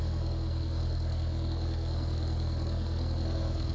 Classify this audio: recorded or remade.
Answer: remade